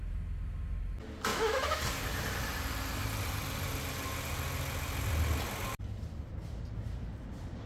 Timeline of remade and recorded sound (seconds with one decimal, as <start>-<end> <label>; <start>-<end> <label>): 0.0-1.3 recorded; 1.3-1.8 remade; 1.8-7.7 recorded